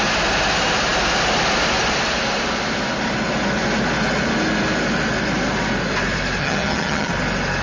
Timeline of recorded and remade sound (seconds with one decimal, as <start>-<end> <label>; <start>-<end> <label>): 0.0-6.4 recorded; 6.4-7.1 remade; 7.1-7.6 recorded